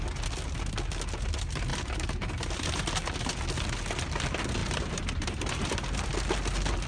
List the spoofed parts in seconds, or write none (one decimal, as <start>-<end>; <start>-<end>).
1.7-2.9; 4.6-6.1